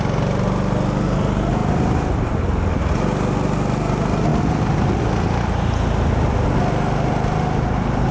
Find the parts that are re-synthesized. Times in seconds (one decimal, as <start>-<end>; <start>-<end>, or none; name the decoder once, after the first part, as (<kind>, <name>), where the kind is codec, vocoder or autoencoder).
4.3-5.0 (vocoder, BigVGAN v2)